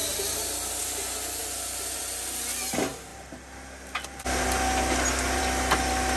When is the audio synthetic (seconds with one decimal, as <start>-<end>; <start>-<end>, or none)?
none